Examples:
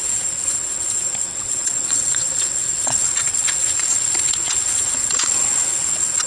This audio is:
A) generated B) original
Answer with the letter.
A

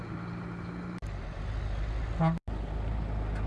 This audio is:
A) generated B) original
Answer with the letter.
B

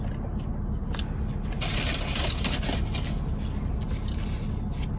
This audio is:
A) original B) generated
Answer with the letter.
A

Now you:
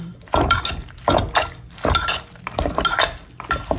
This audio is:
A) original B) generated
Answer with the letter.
A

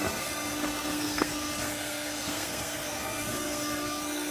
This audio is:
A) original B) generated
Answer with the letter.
B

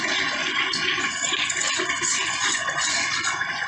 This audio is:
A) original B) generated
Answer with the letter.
B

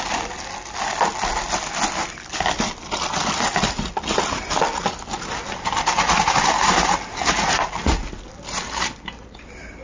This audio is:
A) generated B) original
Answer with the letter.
B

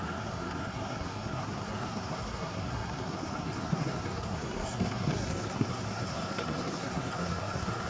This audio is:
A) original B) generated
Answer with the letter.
B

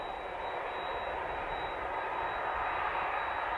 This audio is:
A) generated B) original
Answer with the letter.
B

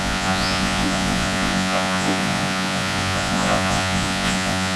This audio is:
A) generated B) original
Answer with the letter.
A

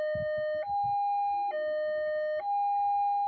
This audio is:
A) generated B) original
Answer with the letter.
B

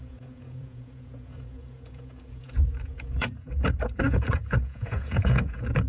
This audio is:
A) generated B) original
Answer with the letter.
A